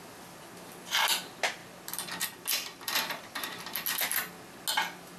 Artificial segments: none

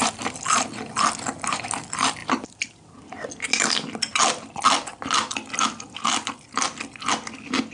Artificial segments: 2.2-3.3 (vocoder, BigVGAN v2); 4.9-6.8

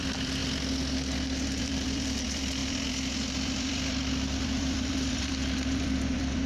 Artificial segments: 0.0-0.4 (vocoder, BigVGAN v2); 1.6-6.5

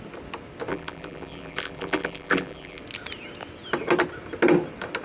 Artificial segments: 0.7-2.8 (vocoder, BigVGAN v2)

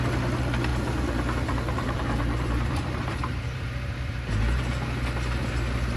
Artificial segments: 0.7-4.3 (vocoder, BigVGAN v2)

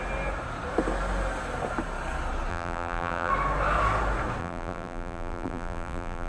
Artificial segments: 2.5-3.3 (vocoder, BigVGAN v2); 4.4-6.3